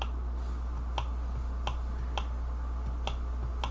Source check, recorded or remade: recorded